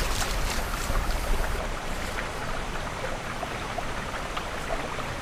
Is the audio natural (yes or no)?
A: no